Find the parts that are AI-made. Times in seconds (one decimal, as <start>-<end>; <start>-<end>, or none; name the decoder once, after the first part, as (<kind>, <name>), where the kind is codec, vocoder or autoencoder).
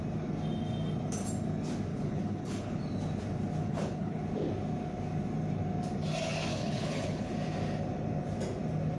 1.9-2.8 (codec, HILCodec); 3.6-4.2; 6.5-7.3